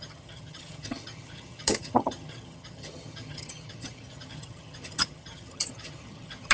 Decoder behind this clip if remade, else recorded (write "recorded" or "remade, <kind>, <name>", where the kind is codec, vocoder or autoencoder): remade, vocoder, HiFi-GAN